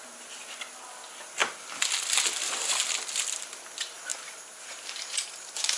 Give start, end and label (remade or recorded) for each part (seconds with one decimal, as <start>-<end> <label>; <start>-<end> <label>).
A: 0.0-4.1 recorded; 4.1-5.8 remade